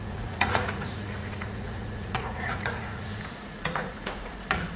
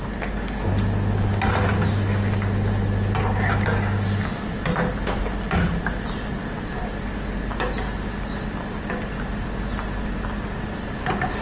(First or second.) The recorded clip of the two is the second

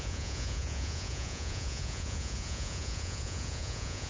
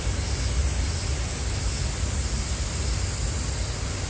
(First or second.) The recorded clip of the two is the second